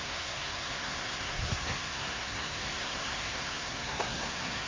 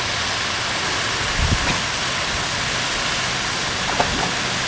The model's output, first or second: first